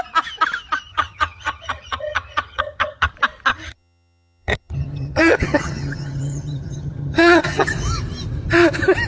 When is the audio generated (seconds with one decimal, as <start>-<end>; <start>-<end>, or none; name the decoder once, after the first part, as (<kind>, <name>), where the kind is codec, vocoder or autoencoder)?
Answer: 0.9-3.1 (vocoder, HiFi-GAN); 3.5-7.7